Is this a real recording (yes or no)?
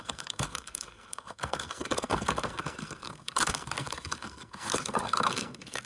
no